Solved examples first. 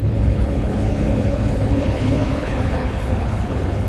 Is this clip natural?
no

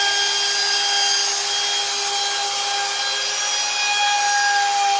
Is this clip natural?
yes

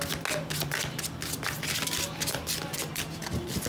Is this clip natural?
yes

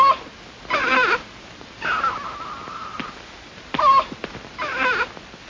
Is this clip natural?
no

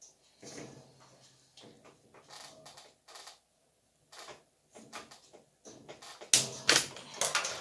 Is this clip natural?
yes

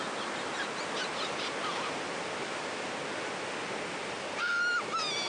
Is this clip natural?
yes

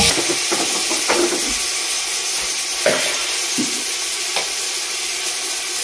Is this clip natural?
yes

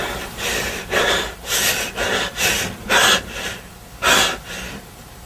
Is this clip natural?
yes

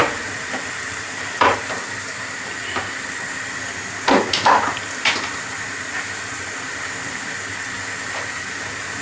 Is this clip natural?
no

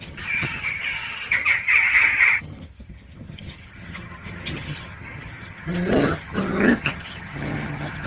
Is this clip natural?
no